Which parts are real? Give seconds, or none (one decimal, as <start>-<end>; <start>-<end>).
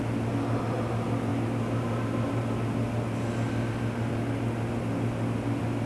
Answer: 0.0-5.9